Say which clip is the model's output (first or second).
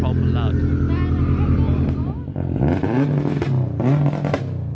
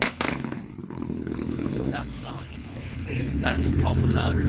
second